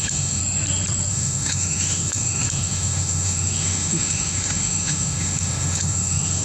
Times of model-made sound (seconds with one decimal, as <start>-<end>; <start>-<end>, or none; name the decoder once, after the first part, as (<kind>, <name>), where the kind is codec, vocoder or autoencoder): 0.0-0.4 (autoencoder, DAC-VAE); 1.1-6.4